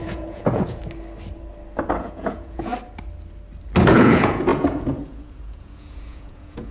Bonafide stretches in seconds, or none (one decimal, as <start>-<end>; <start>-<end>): 0.8-2.0; 2.7-3.9